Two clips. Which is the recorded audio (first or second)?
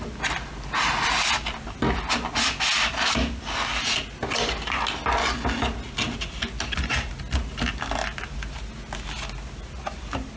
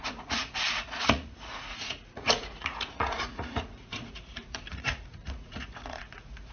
first